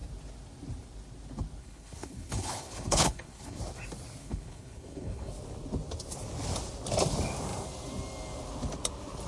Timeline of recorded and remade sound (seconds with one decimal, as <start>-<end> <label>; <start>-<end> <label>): 0.0-1.6 recorded; 1.6-3.6 remade; 3.6-4.2 recorded; 4.2-5.3 remade; 5.3-9.3 recorded